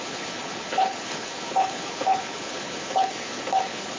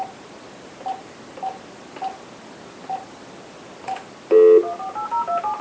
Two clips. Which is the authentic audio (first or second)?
second